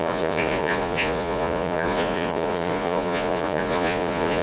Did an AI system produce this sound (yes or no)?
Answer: yes